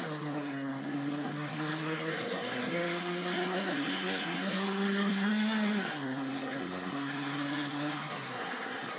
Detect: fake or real fake